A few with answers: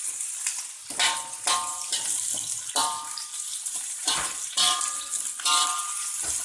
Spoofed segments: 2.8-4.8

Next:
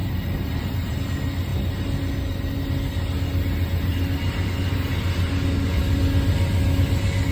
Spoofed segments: 0.0-1.0

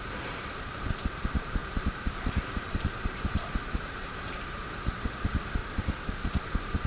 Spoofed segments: 0.0-5.6; 6.1-6.9

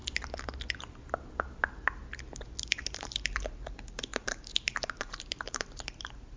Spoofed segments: 2.6-6.4

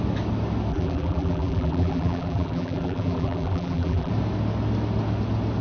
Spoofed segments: 0.7-4.1

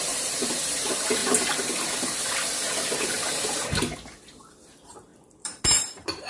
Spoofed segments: 0.0-1.2; 4.5-6.3